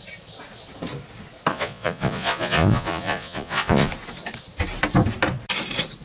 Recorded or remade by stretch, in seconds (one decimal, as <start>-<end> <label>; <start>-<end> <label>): 0.0-1.5 recorded; 1.5-3.9 remade; 3.9-6.0 recorded